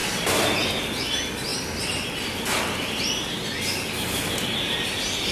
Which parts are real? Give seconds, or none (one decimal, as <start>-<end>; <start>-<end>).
0.0-5.3